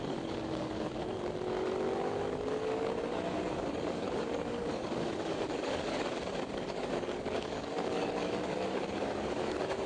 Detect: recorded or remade remade